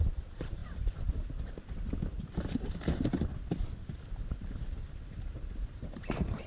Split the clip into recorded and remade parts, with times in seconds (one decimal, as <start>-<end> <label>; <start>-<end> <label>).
0.0-6.5 recorded